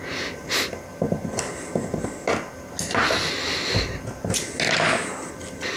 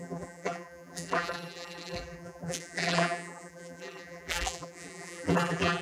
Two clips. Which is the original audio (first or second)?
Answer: first